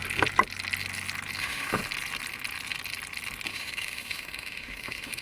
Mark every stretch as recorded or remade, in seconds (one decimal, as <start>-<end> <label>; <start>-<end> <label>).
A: 0.0-1.4 recorded; 1.4-1.8 remade; 1.8-3.5 recorded; 3.5-5.2 remade